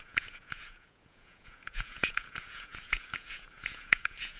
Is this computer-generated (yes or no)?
yes